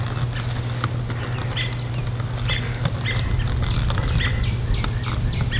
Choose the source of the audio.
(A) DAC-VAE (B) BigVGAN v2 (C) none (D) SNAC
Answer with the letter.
C